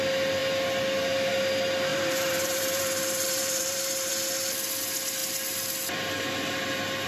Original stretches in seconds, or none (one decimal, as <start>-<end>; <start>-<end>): 0.0-1.9; 4.1-7.1